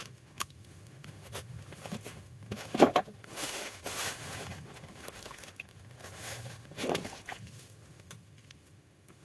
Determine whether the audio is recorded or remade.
remade